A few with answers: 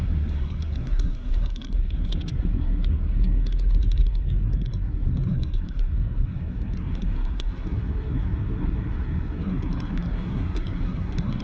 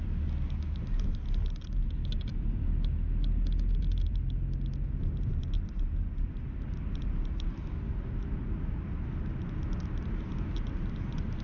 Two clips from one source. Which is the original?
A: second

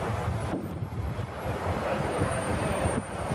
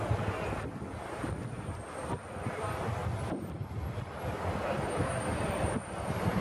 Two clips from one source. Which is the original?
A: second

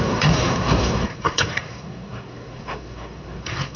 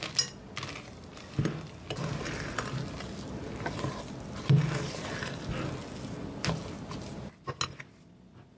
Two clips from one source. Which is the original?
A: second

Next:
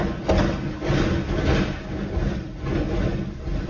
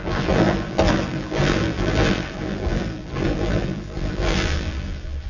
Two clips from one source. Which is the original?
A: first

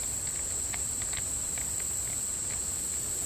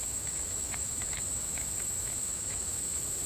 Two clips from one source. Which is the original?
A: first